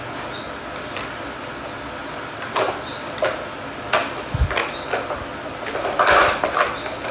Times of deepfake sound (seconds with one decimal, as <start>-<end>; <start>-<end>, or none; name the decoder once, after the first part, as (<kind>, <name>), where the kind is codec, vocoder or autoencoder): 2.0-2.9 (vocoder, BigVGAN v2)